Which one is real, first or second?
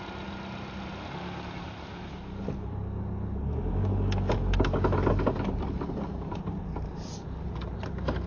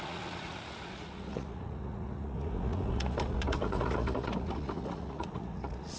first